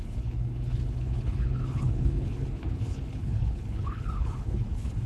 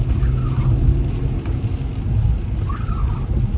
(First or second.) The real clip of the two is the second